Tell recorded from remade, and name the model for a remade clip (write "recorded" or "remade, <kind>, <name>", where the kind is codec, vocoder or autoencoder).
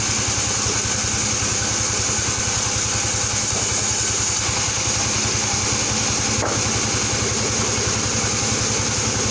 recorded